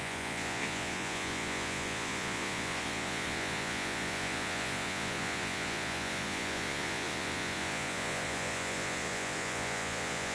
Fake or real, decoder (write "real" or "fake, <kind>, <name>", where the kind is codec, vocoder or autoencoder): fake, vocoder, Vocos